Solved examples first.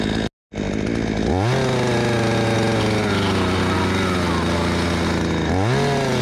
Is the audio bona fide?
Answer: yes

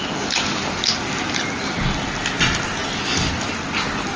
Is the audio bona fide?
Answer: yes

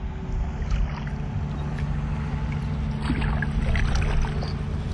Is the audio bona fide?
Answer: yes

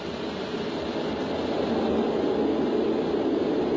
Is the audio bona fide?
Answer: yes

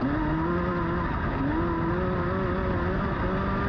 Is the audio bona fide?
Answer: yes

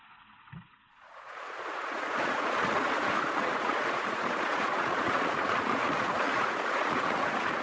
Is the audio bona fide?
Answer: no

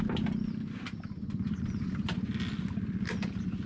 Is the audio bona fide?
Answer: yes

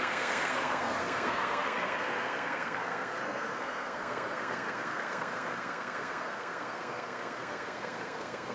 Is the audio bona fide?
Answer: no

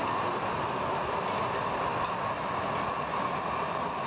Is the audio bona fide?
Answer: yes